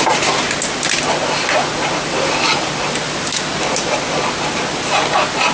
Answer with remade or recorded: recorded